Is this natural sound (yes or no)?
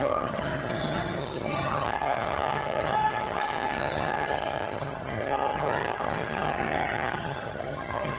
no